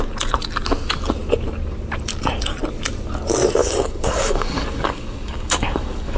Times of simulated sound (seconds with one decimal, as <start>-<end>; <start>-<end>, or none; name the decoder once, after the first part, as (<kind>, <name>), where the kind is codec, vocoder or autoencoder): 3.6-6.2 (codec, DAC)